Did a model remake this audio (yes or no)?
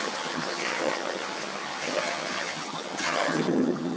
yes